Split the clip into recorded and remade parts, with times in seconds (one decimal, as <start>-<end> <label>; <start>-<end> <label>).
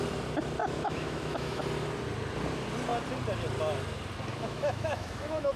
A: 0.0-0.6 recorded; 0.6-1.6 remade; 1.6-4.3 recorded; 4.3-5.6 remade